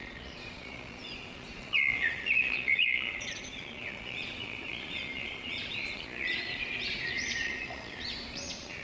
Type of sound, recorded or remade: remade